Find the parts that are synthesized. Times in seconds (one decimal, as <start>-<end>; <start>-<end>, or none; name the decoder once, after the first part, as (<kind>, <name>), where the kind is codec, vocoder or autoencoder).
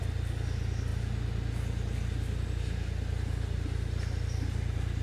none